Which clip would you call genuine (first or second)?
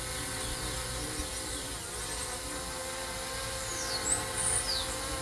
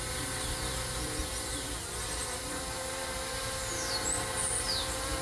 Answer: first